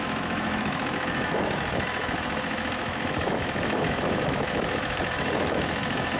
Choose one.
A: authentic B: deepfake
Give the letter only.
B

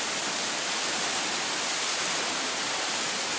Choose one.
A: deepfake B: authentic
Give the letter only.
A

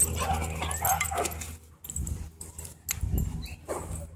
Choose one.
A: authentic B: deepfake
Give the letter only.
A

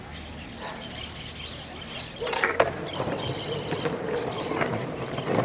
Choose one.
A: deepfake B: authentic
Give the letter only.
B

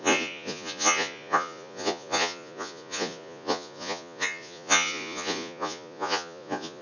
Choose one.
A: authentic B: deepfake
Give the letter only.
B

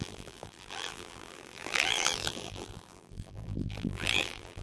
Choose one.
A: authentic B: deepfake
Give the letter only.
B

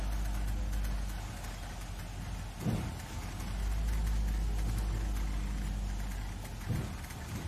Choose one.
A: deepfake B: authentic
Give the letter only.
B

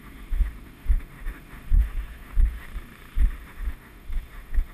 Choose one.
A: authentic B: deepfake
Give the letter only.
B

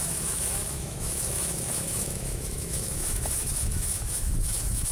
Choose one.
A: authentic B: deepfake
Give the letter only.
B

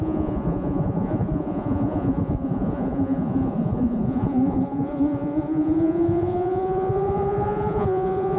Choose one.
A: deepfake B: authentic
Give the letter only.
A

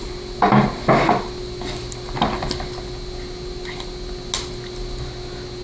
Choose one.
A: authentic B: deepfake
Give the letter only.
A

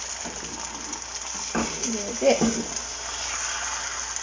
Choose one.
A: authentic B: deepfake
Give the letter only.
A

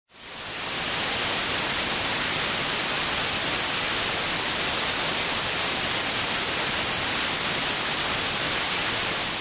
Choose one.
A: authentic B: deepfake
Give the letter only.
A